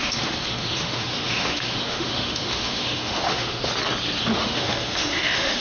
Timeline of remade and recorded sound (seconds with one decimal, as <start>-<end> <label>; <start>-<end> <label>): 0.0-3.7 remade; 3.7-4.2 recorded; 4.2-5.6 remade